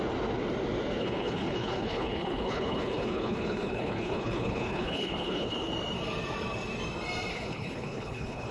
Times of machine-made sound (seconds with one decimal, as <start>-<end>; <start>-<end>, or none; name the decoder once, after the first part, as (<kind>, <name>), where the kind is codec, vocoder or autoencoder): 1.0-5.7 (codec, HILCodec); 7.3-8.5